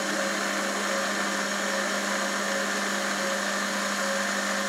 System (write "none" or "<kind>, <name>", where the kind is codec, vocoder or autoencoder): none